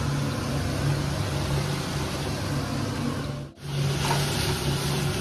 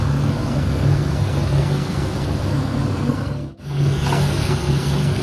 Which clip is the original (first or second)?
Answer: first